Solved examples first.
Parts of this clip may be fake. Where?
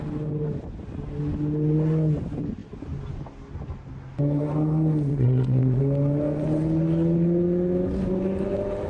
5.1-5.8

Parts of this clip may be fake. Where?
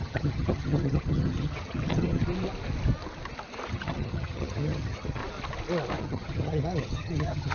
0.0-2.2; 3.7-5.2; 6.0-7.5